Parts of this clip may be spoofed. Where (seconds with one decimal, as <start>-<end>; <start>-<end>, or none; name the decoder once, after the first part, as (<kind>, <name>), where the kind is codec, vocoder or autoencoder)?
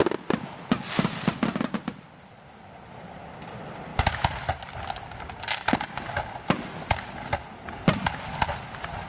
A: none